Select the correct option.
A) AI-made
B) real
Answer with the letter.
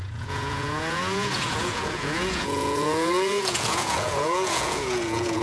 A